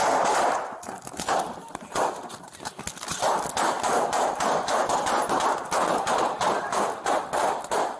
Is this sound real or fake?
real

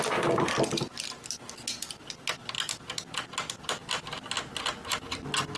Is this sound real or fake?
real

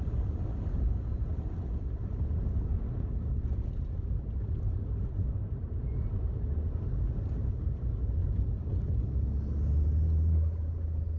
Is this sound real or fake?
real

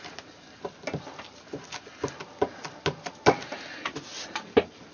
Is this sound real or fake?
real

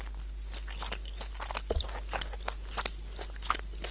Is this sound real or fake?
real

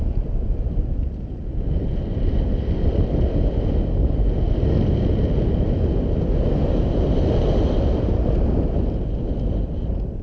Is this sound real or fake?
real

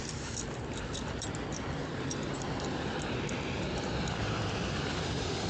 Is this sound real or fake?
fake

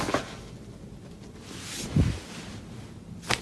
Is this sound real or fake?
real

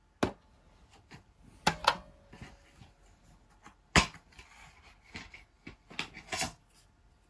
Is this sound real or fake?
real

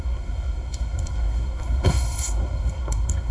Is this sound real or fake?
fake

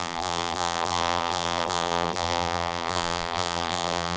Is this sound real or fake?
fake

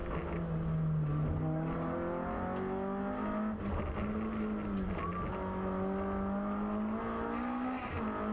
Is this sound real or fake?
real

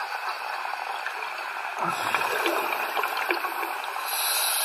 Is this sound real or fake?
real